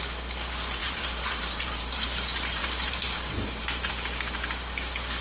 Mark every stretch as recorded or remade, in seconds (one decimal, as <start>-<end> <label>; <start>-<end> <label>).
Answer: 0.0-0.8 recorded; 0.8-3.9 remade; 3.9-5.2 recorded